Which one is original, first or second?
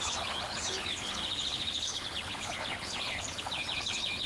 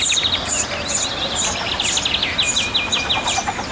second